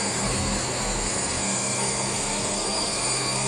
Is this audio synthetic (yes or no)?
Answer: yes